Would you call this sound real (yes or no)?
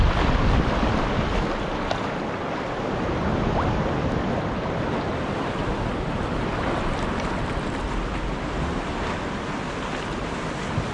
yes